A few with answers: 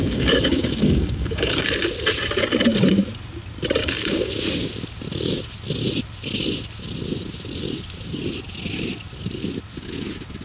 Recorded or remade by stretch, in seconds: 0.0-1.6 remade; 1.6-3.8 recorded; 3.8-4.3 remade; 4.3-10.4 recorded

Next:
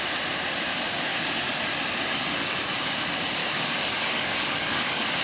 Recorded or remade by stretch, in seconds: 0.0-0.7 recorded; 0.7-1.6 remade; 1.6-3.4 recorded; 3.4-5.2 remade

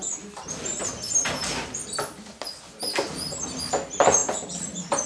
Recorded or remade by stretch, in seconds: 0.0-5.1 recorded

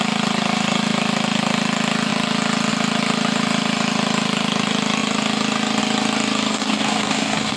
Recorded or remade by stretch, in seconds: 0.0-6.5 recorded; 6.5-7.6 remade

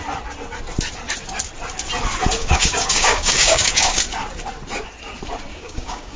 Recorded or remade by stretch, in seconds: 0.0-2.4 recorded; 2.4-4.0 remade; 4.0-5.5 recorded; 5.5-6.2 remade

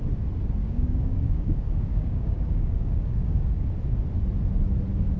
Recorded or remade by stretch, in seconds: 0.0-0.6 recorded; 0.6-3.7 remade; 3.7-5.2 recorded

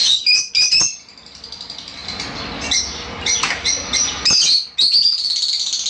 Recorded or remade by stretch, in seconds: 0.0-0.5 remade; 0.5-5.9 recorded